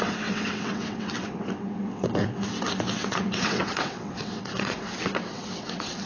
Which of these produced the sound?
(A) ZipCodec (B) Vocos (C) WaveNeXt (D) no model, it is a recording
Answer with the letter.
C